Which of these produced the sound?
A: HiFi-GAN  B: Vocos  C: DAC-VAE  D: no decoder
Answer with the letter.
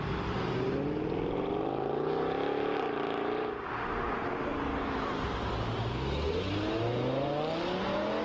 D